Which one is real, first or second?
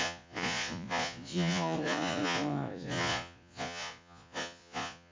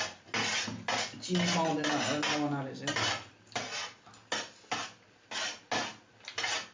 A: second